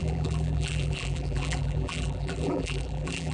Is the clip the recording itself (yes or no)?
no